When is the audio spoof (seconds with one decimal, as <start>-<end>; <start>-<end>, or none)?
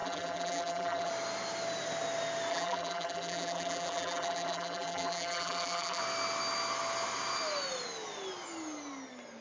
0.0-1.1; 2.5-6.0